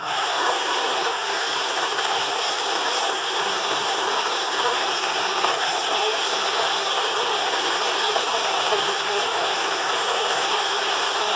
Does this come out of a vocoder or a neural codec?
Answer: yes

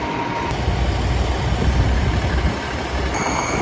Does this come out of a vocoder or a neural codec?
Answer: no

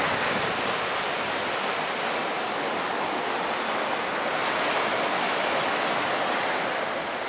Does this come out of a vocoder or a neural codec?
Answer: no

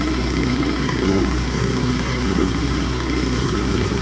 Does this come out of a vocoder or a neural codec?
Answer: yes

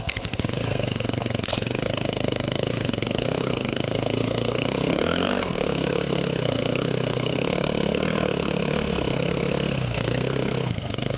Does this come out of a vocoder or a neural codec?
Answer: yes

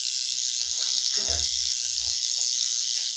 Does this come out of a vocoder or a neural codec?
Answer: yes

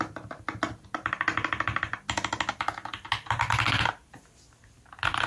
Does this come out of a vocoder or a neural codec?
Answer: no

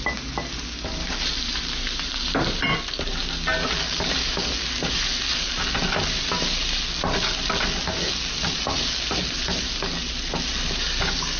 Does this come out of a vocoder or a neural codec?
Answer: no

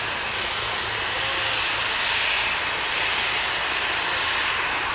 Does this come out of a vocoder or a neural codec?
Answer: no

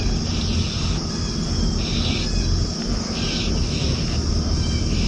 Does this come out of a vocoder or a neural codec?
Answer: no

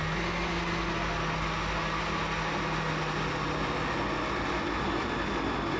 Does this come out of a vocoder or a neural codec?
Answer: no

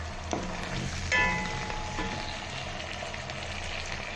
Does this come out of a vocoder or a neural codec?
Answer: no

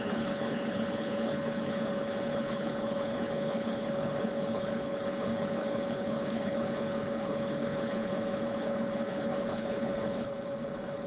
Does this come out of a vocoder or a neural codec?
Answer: yes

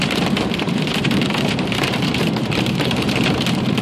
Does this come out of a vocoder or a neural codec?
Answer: yes